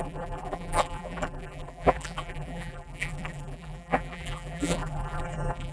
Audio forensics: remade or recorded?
remade